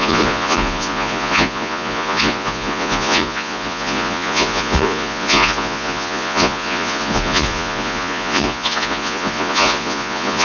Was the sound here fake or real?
fake